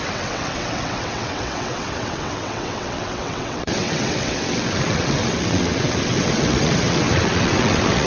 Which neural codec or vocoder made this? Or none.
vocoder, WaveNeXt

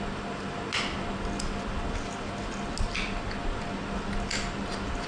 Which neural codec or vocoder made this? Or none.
none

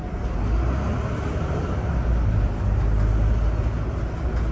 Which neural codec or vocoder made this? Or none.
none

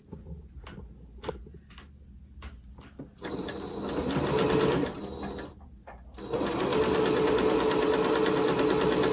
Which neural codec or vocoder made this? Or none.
none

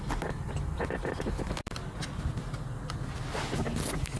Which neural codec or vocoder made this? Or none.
none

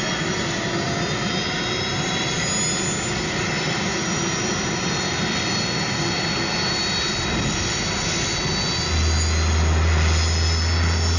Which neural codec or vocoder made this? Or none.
none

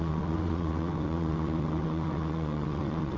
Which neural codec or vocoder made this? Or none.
vocoder, WaveNeXt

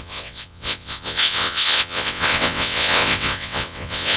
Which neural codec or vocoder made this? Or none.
vocoder, WaveNeXt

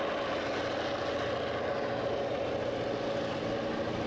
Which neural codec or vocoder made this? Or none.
none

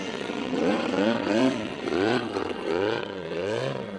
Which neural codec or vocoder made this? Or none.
vocoder, WaveNeXt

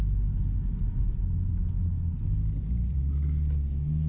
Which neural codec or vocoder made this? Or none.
none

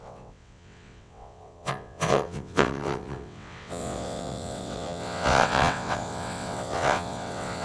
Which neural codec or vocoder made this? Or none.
vocoder, WaveNeXt